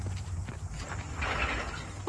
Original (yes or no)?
yes